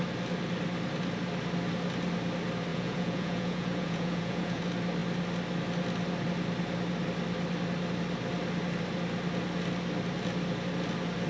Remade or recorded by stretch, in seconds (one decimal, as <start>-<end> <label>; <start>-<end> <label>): 0.0-2.7 recorded; 2.7-4.6 remade; 4.6-11.3 recorded